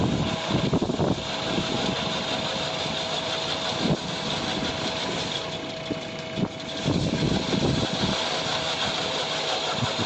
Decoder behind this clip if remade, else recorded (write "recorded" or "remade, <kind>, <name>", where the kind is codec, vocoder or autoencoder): recorded